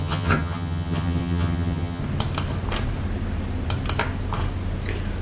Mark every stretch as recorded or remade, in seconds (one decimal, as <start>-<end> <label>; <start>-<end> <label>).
0.0-2.0 remade; 2.0-5.2 recorded